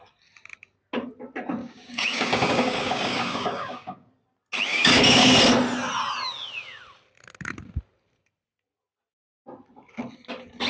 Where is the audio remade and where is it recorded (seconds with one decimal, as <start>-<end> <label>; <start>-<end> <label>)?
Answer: 0.0-1.6 recorded; 1.6-4.1 remade; 4.1-4.7 recorded; 4.7-5.3 remade; 5.3-10.7 recorded